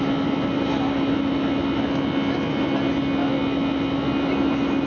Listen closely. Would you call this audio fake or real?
real